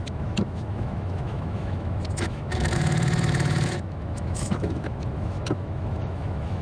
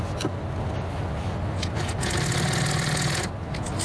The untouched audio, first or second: second